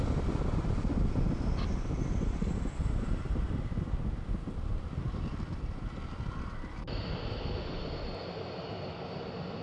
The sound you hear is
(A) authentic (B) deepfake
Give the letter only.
A